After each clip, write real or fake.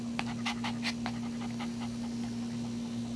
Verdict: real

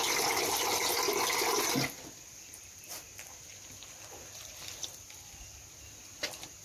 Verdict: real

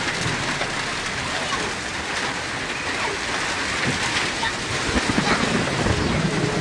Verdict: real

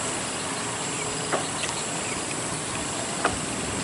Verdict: real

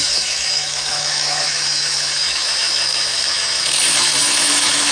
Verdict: fake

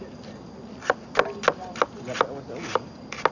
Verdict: real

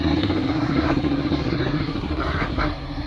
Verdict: fake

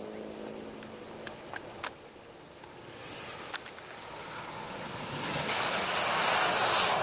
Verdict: real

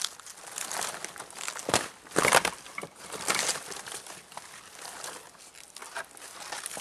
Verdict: real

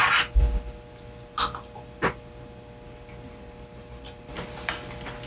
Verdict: real